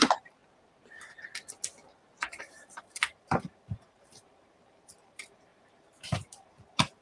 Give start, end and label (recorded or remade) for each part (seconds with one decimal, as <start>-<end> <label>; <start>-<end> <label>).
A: 0.0-0.4 remade; 0.4-2.4 recorded; 2.4-7.0 remade